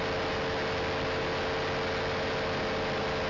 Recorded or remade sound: recorded